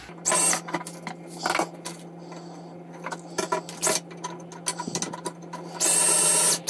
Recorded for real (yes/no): yes